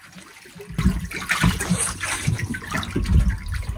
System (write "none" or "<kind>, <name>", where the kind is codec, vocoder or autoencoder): none